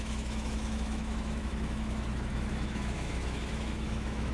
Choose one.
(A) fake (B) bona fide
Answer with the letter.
A